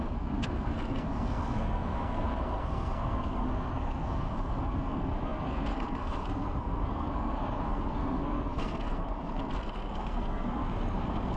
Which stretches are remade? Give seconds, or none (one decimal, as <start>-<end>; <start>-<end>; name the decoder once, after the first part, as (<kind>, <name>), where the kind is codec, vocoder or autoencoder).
0.0-11.4 (codec, SNAC)

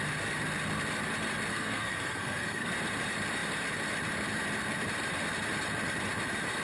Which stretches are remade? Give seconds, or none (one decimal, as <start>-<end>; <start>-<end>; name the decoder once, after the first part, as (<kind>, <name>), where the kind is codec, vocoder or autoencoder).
1.5-2.7 (codec, SNAC)

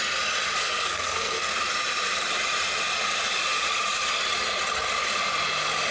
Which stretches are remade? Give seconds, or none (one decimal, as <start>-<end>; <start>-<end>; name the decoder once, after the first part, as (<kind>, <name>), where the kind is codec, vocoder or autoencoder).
0.6-1.5 (codec, SNAC)

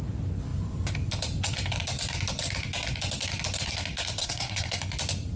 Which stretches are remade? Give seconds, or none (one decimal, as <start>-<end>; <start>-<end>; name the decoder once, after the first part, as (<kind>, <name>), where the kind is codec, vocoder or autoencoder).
4.2-4.8 (codec, SNAC)

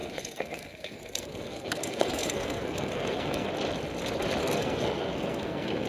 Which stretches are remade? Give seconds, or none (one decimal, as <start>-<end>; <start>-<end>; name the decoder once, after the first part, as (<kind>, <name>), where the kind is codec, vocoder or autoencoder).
0.0-3.5 (codec, SNAC); 4.4-5.9

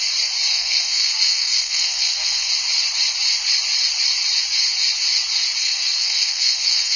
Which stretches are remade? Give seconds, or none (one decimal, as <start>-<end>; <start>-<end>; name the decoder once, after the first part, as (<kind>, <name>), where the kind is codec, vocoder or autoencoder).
0.5-2.5 (codec, SNAC); 5.6-7.0

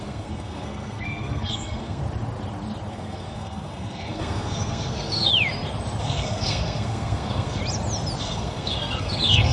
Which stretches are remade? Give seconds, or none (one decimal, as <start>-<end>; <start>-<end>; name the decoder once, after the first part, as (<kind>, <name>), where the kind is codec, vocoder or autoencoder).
0.0-2.0 (codec, SNAC); 2.9-5.3; 6.0-7.6; 8.2-9.5